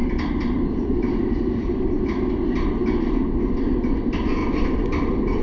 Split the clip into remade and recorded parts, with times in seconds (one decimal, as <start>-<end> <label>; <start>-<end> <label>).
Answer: 0.0-2.0 remade; 2.0-5.4 recorded